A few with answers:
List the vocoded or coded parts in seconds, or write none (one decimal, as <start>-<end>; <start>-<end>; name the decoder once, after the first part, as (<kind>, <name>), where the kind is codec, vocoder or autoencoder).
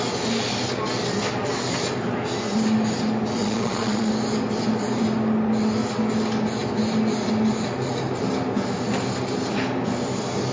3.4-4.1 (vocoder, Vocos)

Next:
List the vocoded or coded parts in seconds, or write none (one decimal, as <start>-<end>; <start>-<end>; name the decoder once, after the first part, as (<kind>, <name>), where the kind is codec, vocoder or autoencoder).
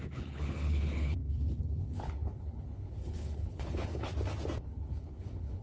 0.0-4.1 (codec, HILCodec); 4.6-5.6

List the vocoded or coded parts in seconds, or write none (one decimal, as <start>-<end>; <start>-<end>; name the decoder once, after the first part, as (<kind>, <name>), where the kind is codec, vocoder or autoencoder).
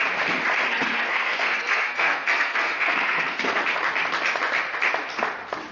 0.7-3.6 (codec, SNAC)